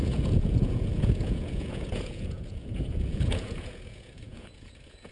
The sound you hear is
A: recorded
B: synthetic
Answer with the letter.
B